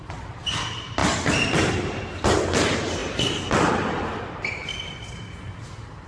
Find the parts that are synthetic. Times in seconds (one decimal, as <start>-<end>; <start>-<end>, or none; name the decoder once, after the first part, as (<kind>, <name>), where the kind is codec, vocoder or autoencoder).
none